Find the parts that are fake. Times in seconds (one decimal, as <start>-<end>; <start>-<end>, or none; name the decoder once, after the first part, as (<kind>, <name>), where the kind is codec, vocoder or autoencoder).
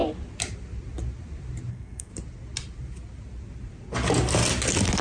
1.7-2.1 (codec, SNAC)